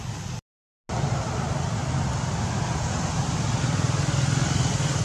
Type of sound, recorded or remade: recorded